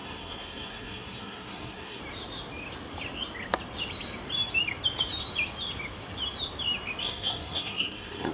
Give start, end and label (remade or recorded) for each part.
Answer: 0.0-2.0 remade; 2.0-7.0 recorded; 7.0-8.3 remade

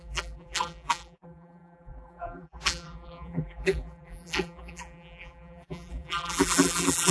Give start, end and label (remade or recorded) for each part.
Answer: 0.0-7.1 remade